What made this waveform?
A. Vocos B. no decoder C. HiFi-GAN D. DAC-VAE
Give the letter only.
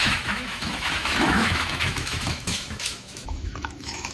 D